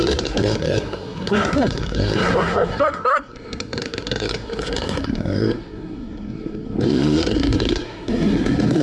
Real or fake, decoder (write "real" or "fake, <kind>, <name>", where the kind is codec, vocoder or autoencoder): fake, codec, SNAC